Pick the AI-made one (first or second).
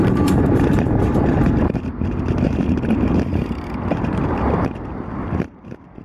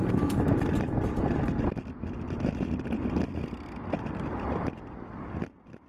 first